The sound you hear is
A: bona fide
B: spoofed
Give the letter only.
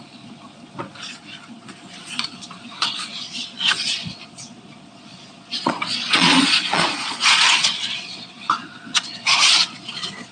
B